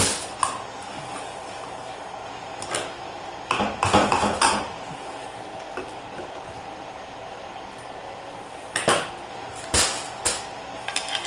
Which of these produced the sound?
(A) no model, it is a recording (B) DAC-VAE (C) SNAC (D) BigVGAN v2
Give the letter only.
A